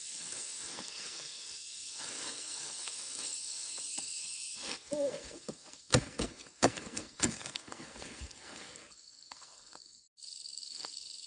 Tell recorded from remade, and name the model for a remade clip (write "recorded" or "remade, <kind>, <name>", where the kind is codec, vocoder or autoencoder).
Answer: remade, codec, SNAC